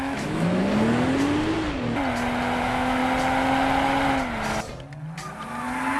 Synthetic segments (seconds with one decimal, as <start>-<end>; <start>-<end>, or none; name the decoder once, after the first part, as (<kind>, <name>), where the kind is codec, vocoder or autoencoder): 0.0-0.6 (autoencoder, DAC-VAE); 2.6-3.0